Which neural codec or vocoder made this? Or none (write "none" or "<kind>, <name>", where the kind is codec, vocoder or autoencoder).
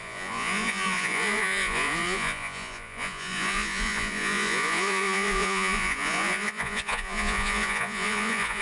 vocoder, Vocos